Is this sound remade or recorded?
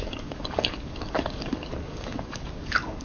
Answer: remade